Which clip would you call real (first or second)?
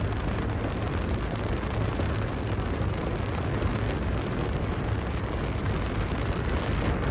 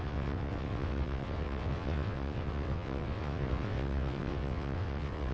first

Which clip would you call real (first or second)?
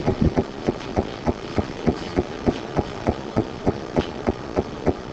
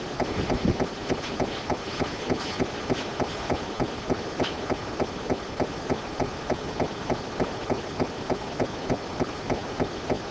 second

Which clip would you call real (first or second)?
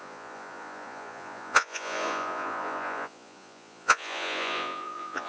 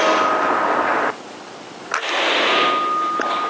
second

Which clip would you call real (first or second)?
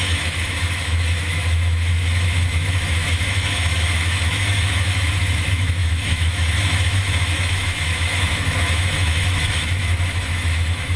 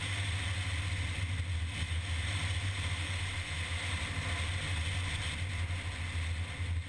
second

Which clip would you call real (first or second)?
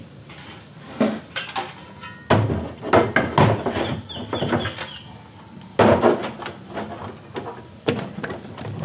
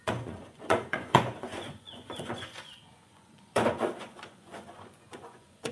first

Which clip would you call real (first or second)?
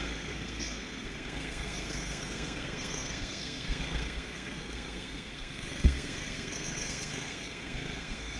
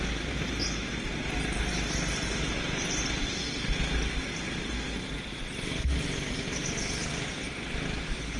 second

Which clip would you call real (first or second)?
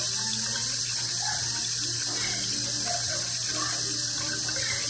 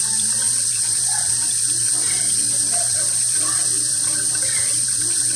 first